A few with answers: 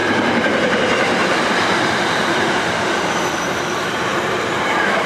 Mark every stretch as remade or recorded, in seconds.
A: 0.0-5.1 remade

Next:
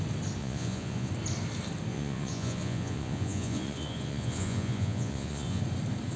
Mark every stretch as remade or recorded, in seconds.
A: 0.0-0.4 recorded; 0.4-1.1 remade; 1.1-1.9 recorded; 1.9-5.6 remade; 5.6-6.2 recorded

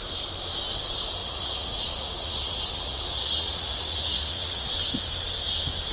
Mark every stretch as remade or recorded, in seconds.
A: 0.0-1.2 recorded; 1.2-4.7 remade; 4.7-5.9 recorded